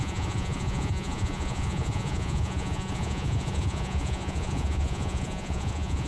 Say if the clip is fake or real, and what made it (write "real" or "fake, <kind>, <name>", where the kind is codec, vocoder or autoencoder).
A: fake, vocoder, Vocos